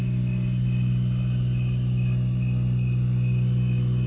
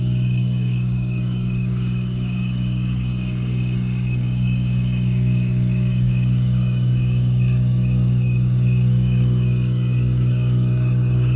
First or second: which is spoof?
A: second